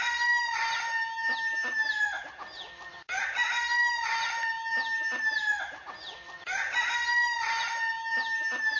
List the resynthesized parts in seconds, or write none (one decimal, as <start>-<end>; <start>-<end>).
none